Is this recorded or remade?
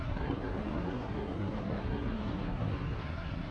remade